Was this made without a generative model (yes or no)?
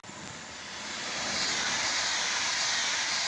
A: yes